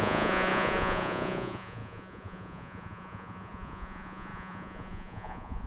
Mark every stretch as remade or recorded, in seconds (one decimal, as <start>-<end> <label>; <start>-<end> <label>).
0.0-5.7 remade

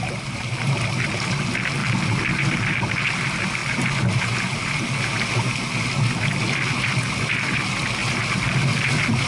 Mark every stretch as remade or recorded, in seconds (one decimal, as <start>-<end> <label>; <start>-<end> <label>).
0.0-9.3 recorded

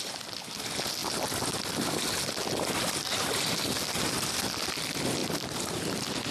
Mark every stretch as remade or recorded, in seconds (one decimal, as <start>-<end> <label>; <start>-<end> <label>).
0.0-6.3 recorded

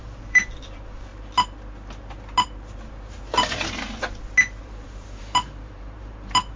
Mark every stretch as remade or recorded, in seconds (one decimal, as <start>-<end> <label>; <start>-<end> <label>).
0.0-1.1 remade; 1.1-4.6 recorded; 4.6-6.6 remade

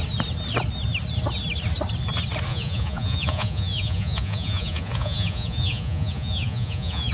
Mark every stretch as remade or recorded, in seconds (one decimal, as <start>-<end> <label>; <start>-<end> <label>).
0.0-2.5 recorded; 2.5-7.1 remade

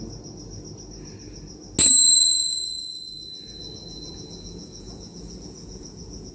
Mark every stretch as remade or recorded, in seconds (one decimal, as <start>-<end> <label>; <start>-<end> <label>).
0.0-2.3 recorded; 2.3-6.3 remade

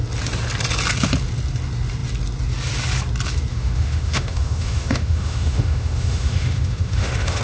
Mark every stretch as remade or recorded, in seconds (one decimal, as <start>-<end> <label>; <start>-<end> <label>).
0.0-3.5 recorded; 3.5-7.4 remade